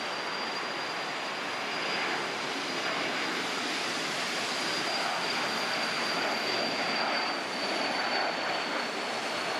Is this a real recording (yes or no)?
yes